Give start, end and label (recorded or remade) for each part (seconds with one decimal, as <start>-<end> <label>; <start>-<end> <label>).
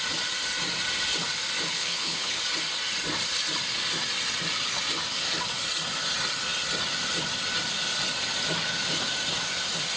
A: 0.0-1.7 recorded; 1.7-2.4 remade; 2.4-10.0 recorded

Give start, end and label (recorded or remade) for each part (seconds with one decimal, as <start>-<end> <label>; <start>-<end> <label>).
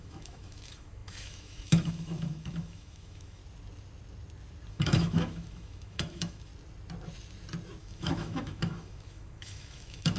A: 0.0-3.4 remade; 3.4-4.7 recorded; 4.7-6.5 remade; 6.5-7.8 recorded; 7.8-10.2 remade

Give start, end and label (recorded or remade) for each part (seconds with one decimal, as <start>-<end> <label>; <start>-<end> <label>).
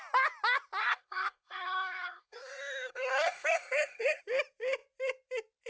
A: 0.0-0.8 recorded; 0.8-4.2 remade; 4.2-5.7 recorded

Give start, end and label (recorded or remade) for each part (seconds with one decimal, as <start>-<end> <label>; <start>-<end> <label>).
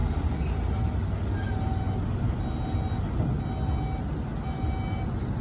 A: 0.0-5.4 recorded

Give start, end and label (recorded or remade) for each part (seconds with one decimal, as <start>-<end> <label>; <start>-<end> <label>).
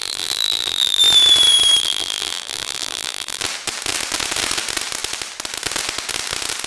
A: 0.0-1.0 remade; 1.0-1.8 recorded; 1.8-3.4 remade; 3.4-6.7 recorded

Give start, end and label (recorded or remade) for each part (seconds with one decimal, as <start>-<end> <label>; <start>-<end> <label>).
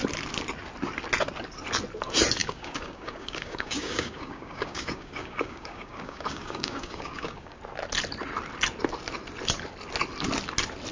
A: 0.0-2.4 recorded; 2.4-7.6 remade; 7.6-10.9 recorded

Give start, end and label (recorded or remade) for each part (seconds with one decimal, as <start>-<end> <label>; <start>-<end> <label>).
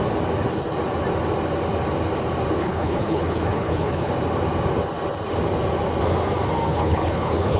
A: 0.0-2.6 recorded; 2.6-4.1 remade; 4.1-6.7 recorded; 6.7-7.6 remade